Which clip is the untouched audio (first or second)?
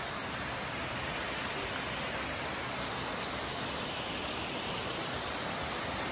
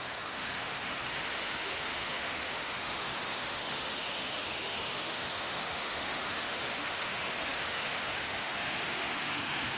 first